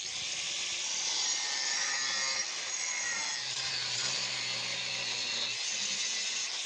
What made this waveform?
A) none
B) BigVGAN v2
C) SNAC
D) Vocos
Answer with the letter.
A